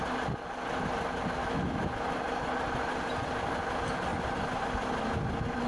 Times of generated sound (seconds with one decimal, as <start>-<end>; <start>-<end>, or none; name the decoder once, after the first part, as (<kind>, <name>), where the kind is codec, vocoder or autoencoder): 1.4-1.9 (autoencoder, DAC-VAE)